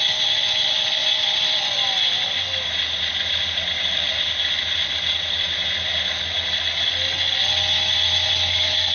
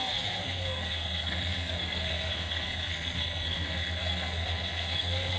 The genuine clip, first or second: first